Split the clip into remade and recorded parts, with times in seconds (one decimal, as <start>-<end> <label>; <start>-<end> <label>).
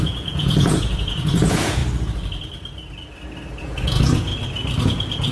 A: 0.0-1.8 remade; 1.8-3.6 recorded; 3.6-4.3 remade; 4.3-4.8 recorded; 4.8-5.3 remade